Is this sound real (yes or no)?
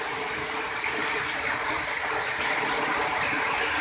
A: yes